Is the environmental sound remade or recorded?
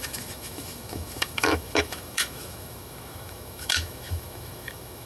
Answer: remade